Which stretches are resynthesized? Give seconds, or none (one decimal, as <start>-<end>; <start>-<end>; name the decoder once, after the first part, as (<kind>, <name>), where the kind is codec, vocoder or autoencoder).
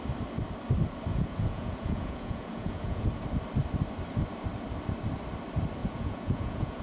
1.1-3.1 (vocoder, Vocos); 5.8-6.8